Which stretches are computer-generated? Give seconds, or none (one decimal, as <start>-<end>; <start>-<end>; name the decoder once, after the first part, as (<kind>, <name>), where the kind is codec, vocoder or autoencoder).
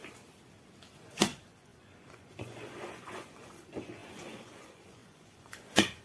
0.9-6.0 (vocoder, Vocos)